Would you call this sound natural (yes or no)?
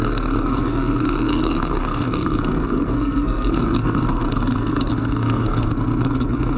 no